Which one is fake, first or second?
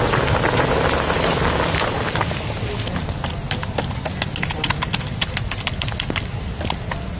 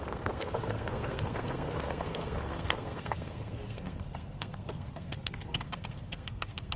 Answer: second